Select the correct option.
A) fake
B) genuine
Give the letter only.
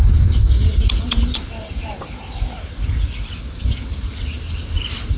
B